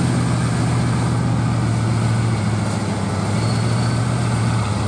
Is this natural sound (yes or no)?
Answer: yes